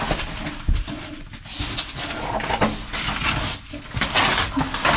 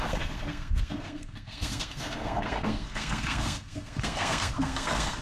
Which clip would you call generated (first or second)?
second